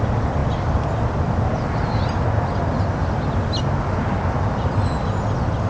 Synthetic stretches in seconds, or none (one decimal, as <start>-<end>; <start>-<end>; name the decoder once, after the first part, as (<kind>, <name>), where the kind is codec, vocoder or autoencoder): none